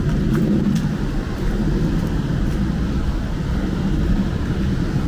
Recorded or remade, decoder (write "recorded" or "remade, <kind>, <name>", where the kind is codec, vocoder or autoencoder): recorded